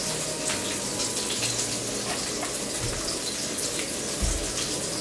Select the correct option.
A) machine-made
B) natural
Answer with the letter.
B